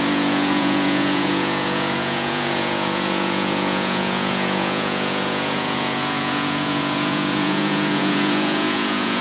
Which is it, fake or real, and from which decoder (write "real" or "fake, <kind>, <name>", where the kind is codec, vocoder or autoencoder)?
fake, vocoder, Vocos